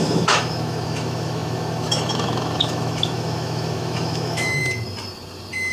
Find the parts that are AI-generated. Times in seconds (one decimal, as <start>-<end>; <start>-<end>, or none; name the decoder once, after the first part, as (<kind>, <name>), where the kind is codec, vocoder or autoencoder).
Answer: 0.0-4.6 (autoencoder, DAC-VAE)